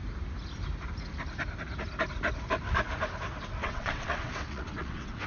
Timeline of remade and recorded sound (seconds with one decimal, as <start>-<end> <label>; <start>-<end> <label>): 0.0-3.6 recorded; 3.6-5.3 remade